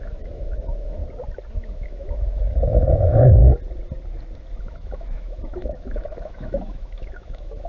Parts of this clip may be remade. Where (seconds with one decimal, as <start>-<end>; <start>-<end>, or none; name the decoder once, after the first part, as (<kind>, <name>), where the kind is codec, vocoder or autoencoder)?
0.0-1.0 (autoencoder, DAC-VAE); 1.6-3.4; 4.6-7.7